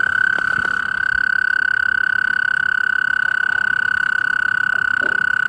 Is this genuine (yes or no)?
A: yes